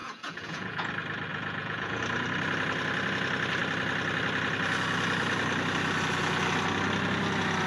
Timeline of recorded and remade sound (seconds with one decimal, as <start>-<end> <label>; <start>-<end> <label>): 0.0-0.9 remade; 0.9-1.3 recorded; 1.3-2.0 remade; 2.0-7.7 recorded